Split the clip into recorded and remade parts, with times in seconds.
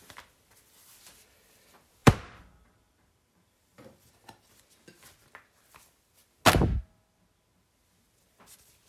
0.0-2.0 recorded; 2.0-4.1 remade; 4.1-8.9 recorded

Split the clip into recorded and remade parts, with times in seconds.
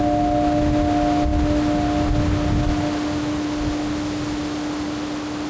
0.0-5.5 recorded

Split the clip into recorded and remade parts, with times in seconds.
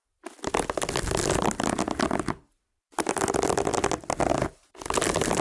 0.0-5.4 recorded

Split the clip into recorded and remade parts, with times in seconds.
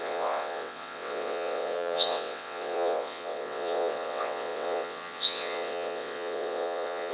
0.0-7.1 remade